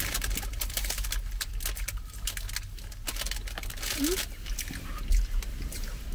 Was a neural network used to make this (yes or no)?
no